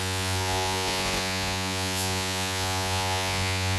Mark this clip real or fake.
fake